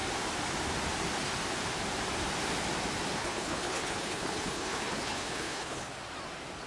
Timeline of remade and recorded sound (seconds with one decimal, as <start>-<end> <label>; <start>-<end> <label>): 0.0-3.2 recorded; 3.2-5.9 remade; 5.9-6.7 recorded